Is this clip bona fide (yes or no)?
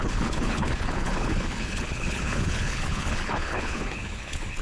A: no